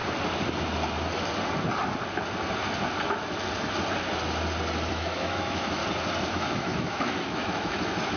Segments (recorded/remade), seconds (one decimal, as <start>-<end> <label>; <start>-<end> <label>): 0.0-4.9 recorded; 4.9-5.8 remade; 5.8-6.3 recorded; 6.3-8.2 remade